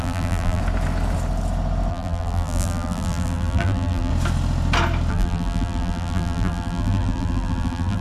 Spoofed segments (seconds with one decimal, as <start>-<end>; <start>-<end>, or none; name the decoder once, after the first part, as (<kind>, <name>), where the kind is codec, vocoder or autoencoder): 0.0-0.6 (vocoder, BigVGAN v2); 1.9-4.1; 5.1-8.0